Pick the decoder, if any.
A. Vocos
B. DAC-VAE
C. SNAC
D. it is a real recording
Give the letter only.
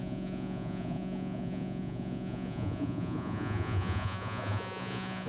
A